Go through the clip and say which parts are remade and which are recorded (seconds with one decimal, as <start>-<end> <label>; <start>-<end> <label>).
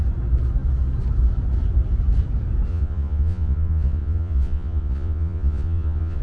0.0-2.7 recorded; 2.7-6.2 remade